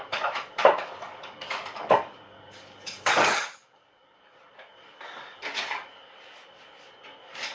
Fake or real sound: fake